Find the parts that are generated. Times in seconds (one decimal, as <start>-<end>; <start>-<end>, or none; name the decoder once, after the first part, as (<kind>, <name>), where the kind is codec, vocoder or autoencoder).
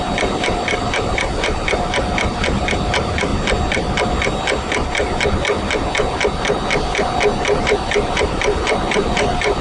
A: 0.0-3.3 (vocoder, BigVGAN v2); 7.6-9.6